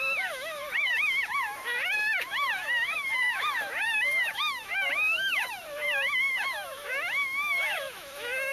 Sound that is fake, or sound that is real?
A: fake